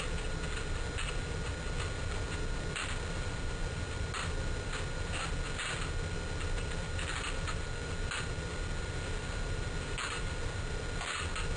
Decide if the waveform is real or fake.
real